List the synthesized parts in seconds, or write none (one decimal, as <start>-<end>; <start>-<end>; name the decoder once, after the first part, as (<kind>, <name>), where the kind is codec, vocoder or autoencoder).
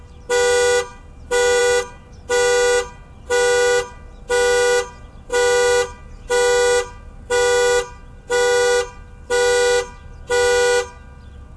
none